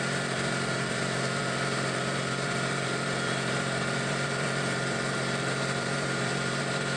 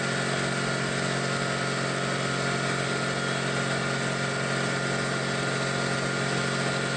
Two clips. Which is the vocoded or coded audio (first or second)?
first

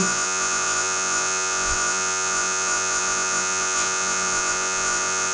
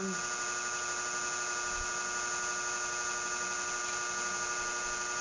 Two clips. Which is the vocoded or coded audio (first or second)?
first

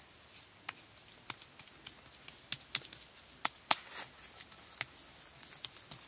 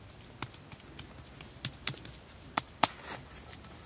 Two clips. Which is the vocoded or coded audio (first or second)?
second